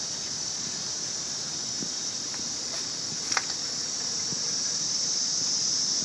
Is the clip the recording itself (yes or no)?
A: yes